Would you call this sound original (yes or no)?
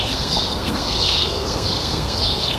no